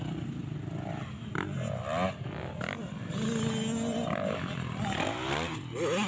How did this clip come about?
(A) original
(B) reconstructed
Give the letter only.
A